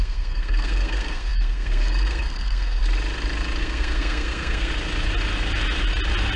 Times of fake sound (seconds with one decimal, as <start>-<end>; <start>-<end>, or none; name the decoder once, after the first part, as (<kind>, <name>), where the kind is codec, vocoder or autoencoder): 0.0-2.8 (codec, SNAC); 3.6-4.7